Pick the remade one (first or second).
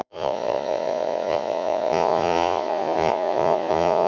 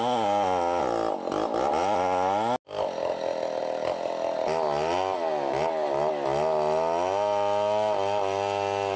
first